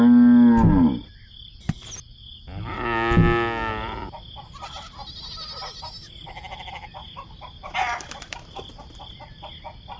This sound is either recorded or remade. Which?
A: recorded